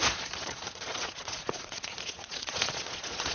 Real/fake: fake